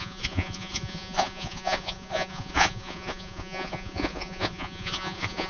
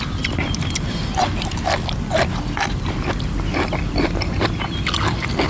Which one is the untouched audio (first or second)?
second